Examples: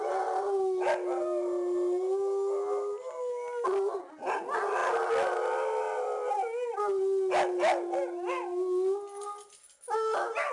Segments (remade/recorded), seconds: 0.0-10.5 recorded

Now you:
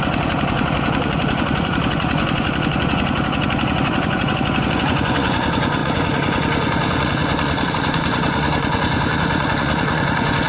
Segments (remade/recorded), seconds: 0.0-10.5 remade

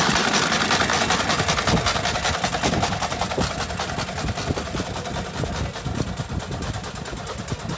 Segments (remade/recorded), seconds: 0.0-7.8 recorded

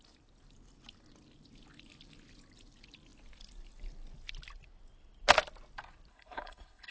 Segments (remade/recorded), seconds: 0.0-6.1 recorded; 6.1-6.9 remade

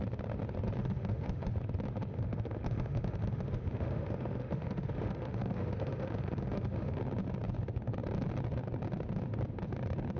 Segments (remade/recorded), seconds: 0.0-0.8 recorded; 0.8-1.5 remade; 1.5-2.1 recorded; 2.1-7.0 remade; 7.0-10.2 recorded

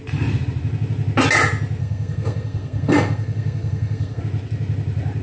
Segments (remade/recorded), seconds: 0.0-1.8 recorded; 1.8-4.2 remade; 4.2-5.2 recorded

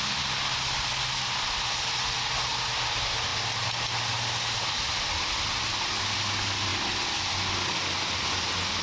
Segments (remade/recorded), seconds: 0.0-8.8 recorded